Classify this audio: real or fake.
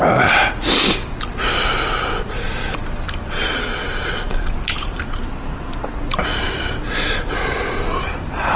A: real